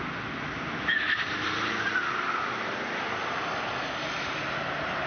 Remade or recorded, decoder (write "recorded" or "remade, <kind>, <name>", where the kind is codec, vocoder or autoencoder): recorded